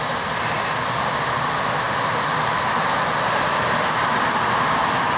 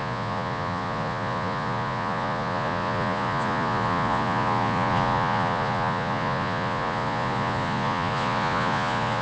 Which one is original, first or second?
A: first